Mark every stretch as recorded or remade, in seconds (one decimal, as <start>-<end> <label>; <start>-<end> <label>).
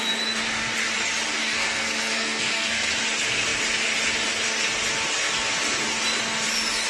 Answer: 0.0-1.4 recorded; 1.4-2.9 remade; 2.9-6.9 recorded